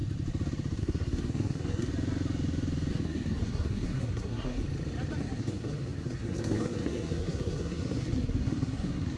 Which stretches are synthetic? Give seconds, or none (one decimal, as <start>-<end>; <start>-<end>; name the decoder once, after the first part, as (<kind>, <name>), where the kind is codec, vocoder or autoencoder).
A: 0.8-1.9 (codec, SNAC); 2.9-4.6; 5.2-9.2